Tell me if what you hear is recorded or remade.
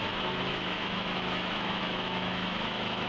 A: remade